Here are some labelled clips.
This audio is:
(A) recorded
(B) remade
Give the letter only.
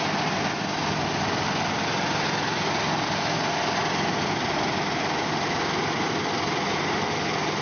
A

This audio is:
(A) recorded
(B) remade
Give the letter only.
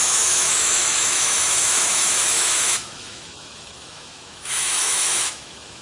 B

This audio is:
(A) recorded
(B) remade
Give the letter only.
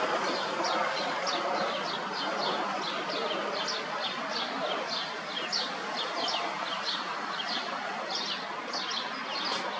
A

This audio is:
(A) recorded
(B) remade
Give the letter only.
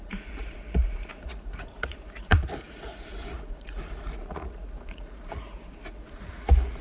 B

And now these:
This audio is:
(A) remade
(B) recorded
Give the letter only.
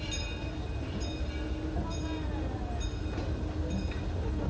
B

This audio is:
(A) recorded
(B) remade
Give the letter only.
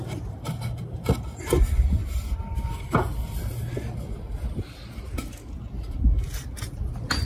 A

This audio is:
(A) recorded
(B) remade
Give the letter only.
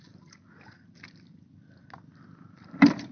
A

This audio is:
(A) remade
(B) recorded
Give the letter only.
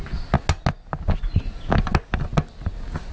B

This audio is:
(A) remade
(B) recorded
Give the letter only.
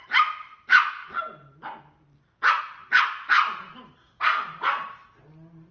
B